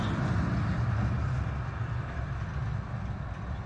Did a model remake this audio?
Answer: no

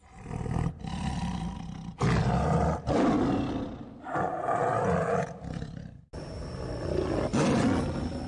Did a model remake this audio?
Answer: no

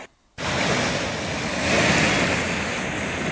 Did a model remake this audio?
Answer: no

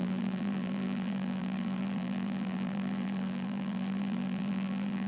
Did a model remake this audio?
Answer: yes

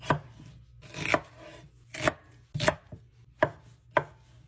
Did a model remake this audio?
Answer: no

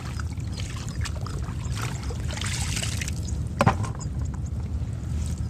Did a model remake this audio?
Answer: no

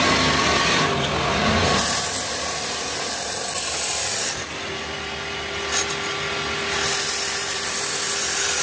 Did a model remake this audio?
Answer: no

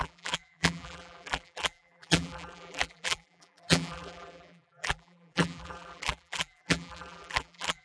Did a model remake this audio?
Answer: yes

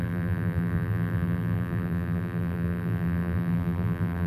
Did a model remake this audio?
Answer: yes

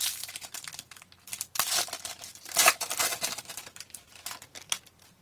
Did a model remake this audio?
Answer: yes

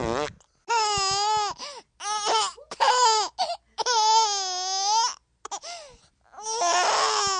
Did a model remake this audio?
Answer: no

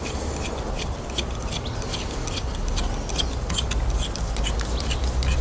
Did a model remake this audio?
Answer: no